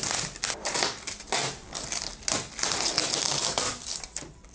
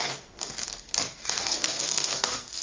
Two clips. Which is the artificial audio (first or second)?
second